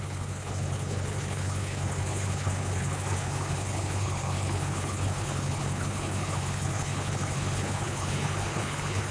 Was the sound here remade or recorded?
remade